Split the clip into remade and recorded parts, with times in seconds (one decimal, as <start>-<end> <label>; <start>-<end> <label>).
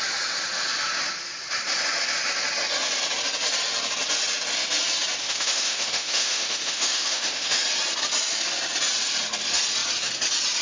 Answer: 0.0-5.2 recorded; 5.2-7.6 remade; 7.6-10.6 recorded